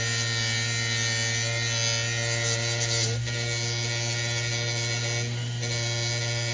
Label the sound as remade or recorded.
recorded